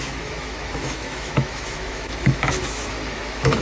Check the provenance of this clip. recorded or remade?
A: remade